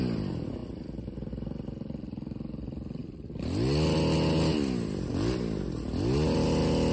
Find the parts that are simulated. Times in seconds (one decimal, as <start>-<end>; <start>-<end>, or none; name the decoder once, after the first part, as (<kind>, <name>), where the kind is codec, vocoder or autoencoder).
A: none